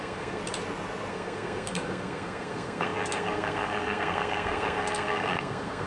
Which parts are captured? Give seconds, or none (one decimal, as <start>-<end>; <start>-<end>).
0.4-1.1